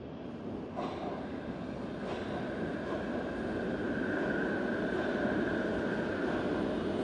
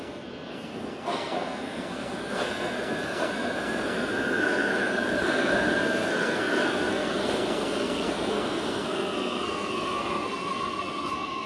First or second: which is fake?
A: second